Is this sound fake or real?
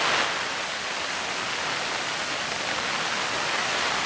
real